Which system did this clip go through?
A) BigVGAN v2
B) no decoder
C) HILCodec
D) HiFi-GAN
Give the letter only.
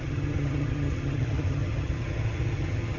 D